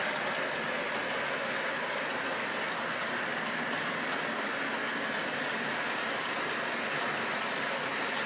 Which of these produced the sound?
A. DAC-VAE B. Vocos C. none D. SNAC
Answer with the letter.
C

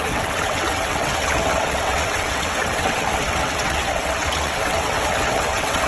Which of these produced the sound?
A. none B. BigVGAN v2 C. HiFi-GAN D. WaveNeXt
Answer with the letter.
D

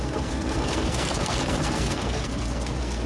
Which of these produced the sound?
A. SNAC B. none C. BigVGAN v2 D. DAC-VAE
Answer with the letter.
A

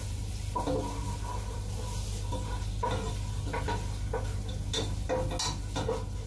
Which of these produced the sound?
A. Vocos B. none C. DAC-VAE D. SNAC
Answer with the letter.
B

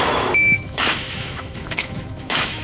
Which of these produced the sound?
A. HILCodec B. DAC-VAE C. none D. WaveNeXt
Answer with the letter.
B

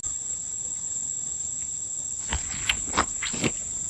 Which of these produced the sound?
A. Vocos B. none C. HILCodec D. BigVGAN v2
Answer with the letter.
B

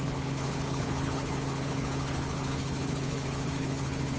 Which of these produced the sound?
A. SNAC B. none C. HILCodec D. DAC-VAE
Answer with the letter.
C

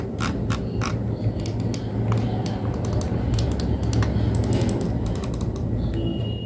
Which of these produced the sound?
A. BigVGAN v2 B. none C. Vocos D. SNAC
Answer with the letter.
B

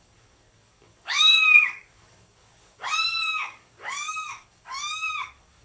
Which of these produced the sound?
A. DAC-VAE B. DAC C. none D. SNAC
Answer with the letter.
B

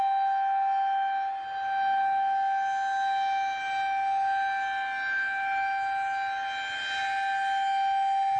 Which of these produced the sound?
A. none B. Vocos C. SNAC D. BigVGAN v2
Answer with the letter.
A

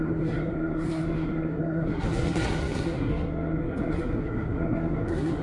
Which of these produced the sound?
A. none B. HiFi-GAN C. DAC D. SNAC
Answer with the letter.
D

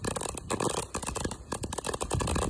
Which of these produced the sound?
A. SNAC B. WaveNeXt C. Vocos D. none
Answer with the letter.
D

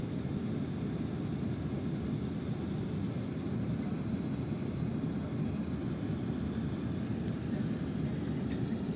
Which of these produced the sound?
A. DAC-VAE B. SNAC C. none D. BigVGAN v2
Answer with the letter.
C